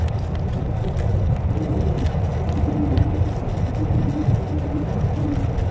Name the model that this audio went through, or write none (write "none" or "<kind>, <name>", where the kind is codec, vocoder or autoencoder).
none